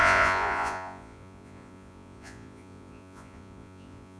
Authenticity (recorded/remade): remade